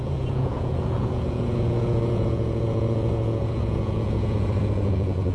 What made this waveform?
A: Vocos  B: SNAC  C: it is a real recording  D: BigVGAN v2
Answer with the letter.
A